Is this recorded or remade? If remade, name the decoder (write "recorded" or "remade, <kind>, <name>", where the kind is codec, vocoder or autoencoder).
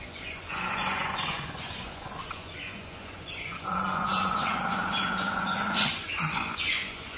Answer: remade, vocoder, Vocos